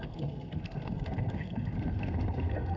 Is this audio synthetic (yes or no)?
yes